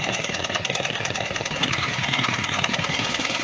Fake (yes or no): yes